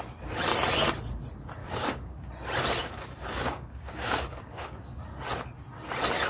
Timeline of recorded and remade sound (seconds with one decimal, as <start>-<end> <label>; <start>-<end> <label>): 0.0-1.6 recorded; 1.6-2.3 remade; 2.3-2.8 recorded; 2.8-5.0 remade; 5.0-6.3 recorded